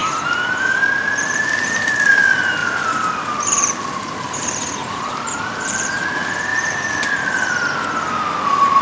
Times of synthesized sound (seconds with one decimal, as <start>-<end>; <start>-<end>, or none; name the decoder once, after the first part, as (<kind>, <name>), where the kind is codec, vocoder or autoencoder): 0.0-2.2 (vocoder, BigVGAN v2); 2.6-6.0; 6.5-7.5